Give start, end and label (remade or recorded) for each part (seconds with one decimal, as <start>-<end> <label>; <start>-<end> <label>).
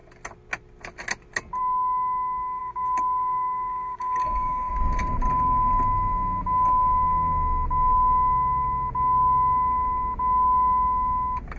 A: 0.0-2.6 recorded; 2.6-4.7 remade; 4.7-11.6 recorded